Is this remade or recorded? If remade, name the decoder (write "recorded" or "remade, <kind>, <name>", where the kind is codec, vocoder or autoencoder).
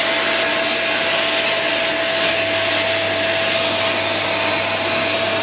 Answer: recorded